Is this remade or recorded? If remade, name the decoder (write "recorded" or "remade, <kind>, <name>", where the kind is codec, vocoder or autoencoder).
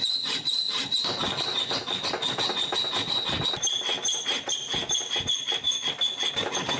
recorded